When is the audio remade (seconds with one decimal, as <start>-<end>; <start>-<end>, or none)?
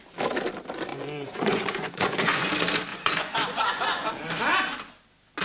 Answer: 0.9-2.5; 2.9-4.1